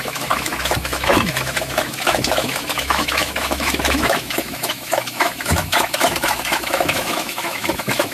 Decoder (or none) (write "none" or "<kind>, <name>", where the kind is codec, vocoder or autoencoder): autoencoder, DAC-VAE